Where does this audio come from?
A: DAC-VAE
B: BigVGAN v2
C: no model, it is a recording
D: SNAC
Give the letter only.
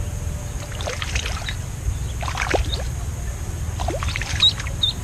C